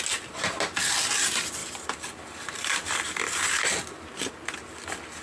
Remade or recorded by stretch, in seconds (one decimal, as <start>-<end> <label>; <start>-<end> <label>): 0.0-1.6 recorded; 1.6-4.3 remade; 4.3-5.2 recorded